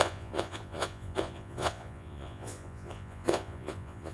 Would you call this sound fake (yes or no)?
yes